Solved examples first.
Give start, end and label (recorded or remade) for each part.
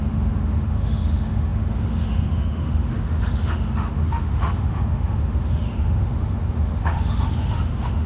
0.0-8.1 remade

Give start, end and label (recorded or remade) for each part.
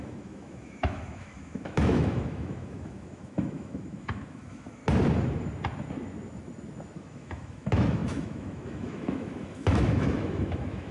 0.0-4.8 remade; 4.8-7.0 recorded; 7.0-10.9 remade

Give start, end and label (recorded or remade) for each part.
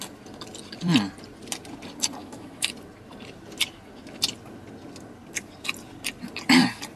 0.0-2.2 recorded; 2.2-2.7 remade; 2.7-7.0 recorded